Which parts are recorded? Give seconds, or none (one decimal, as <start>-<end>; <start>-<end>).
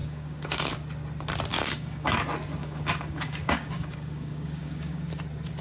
0.7-1.5; 2.2-2.6; 5.1-5.6